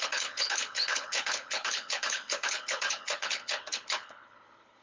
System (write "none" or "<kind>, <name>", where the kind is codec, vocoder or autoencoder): codec, HILCodec